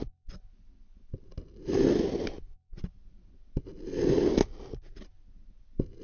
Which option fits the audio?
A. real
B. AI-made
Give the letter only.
A